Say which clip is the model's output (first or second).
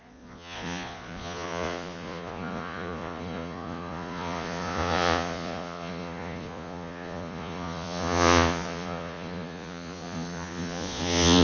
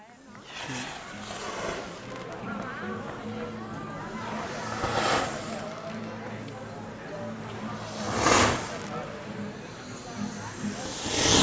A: first